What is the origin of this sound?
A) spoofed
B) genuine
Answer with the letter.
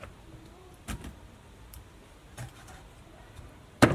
A